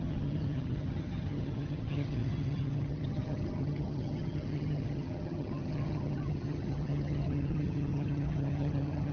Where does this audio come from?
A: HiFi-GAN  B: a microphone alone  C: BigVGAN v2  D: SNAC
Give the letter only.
A